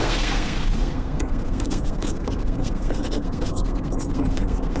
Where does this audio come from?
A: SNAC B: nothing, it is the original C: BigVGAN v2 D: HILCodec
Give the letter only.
A